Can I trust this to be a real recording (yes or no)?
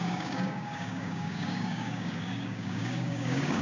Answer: no